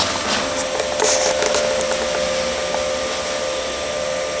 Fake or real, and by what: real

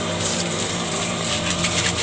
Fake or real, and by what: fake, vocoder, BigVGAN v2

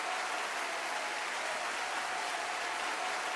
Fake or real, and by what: real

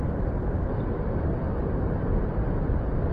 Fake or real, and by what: real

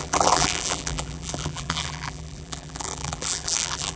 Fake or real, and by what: fake, vocoder, BigVGAN v2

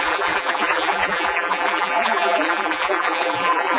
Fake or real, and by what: fake, vocoder, BigVGAN v2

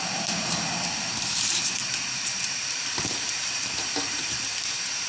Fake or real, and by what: fake, vocoder, BigVGAN v2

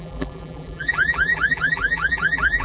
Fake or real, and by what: fake, vocoder, BigVGAN v2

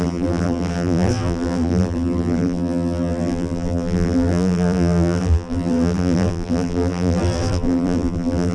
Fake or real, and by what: fake, vocoder, BigVGAN v2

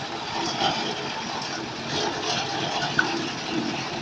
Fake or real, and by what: real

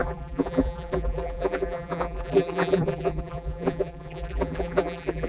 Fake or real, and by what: fake, vocoder, BigVGAN v2